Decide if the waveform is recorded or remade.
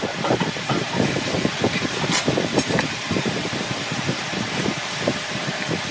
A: remade